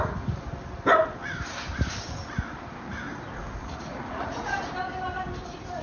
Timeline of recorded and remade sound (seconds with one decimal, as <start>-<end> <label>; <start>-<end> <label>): 0.0-3.6 recorded; 3.6-4.6 remade; 4.6-5.8 recorded